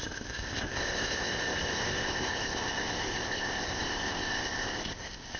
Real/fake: fake